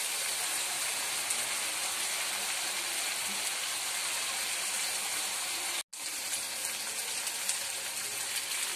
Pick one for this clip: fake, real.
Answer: real